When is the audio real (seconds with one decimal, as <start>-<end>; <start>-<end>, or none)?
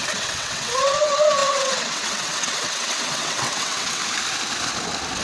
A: 4.0-5.2